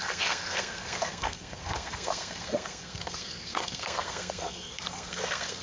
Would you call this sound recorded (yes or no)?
no